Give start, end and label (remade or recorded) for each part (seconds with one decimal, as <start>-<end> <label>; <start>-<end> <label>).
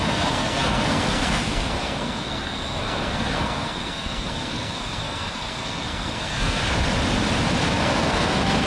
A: 0.0-6.6 remade; 6.6-7.6 recorded; 7.6-8.7 remade